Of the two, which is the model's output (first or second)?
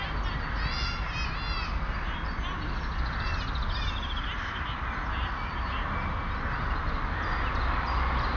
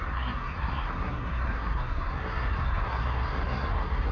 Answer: second